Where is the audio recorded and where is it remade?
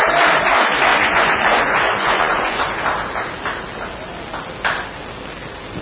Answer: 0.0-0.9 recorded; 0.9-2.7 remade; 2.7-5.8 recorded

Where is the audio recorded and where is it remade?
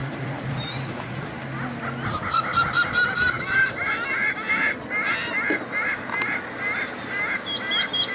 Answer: 0.0-1.3 remade; 1.3-8.1 recorded